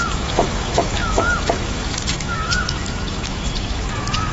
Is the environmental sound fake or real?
fake